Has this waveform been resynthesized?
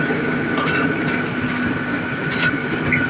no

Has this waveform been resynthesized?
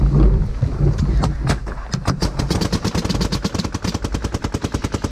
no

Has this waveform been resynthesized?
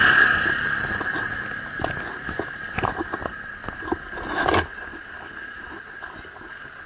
no